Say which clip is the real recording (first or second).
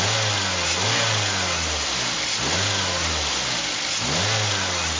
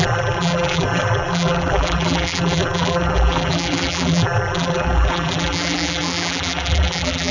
first